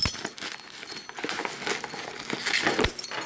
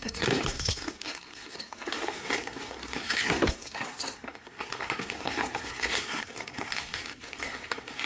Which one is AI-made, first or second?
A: second